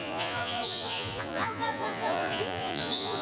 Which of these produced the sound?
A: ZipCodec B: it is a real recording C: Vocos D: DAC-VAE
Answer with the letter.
C